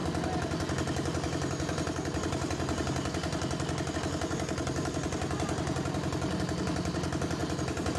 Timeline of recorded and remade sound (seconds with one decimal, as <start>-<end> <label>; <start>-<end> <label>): 0.0-8.0 recorded